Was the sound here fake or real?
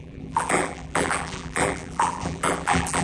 fake